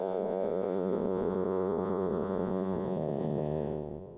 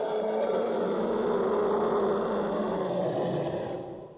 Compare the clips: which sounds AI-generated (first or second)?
first